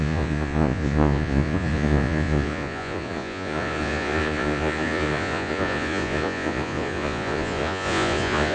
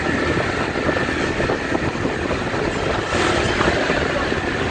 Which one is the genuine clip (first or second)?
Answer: second